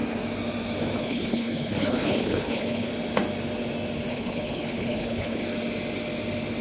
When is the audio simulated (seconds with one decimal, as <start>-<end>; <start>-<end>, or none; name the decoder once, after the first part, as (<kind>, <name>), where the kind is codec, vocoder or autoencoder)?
1.0-2.9 (codec, HILCodec); 4.1-5.4